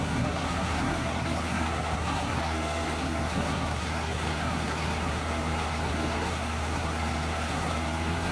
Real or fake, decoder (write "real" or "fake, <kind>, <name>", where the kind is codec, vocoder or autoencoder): fake, codec, SNAC